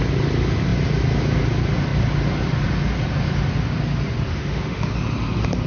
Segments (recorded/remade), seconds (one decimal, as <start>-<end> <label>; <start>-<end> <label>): 0.0-4.3 recorded; 4.3-4.9 remade; 4.9-5.7 recorded